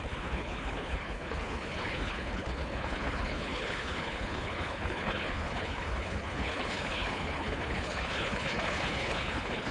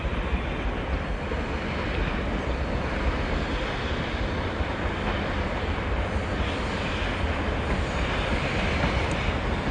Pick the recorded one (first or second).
second